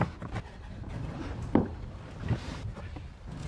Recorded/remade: recorded